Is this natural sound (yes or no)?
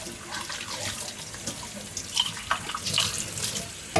yes